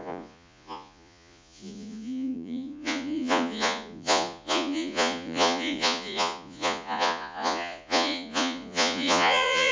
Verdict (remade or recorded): remade